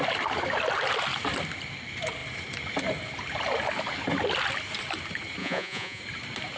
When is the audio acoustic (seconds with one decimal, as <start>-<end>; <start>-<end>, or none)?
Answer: 0.0-5.4; 6.0-6.6